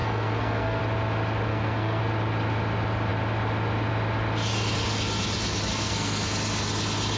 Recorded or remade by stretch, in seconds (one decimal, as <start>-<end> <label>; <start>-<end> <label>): 0.0-0.8 remade; 0.8-1.5 recorded; 1.5-2.0 remade; 2.0-5.7 recorded; 5.7-6.3 remade; 6.3-7.2 recorded